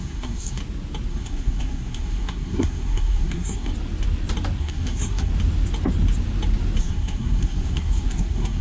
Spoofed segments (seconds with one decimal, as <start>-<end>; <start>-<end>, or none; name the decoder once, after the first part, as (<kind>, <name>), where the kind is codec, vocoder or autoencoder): 0.0-0.6 (codec, SNAC); 1.1-3.7; 4.6-5.3; 6.8-8.6